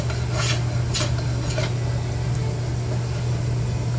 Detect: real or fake real